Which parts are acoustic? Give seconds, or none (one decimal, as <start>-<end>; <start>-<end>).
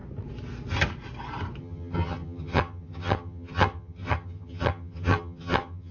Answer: 0.0-1.6